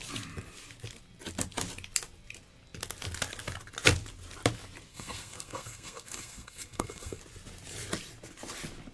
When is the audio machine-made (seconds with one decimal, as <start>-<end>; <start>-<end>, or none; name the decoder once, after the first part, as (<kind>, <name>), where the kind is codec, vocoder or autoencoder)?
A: 4.9-7.2 (codec, SNAC)

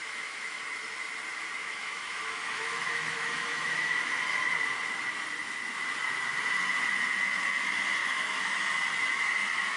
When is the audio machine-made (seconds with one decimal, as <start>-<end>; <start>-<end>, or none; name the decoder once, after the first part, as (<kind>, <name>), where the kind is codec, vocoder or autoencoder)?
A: 0.0-0.6 (autoencoder, DAC-VAE); 1.6-4.2; 8.0-8.7

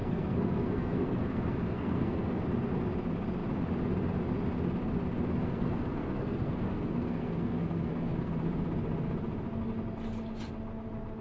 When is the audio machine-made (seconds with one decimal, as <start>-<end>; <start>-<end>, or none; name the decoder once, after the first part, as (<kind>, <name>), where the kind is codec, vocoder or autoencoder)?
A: 0.0-2.4 (codec, SNAC); 5.4-8.3